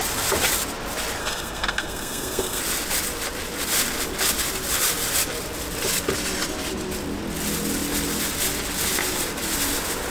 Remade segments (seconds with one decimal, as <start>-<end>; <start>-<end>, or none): 1.2-2.6